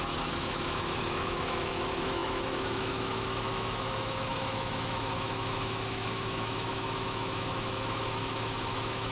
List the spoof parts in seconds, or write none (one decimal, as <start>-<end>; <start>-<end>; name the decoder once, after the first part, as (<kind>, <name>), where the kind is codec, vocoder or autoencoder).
0.0-9.1 (autoencoder, DAC-VAE)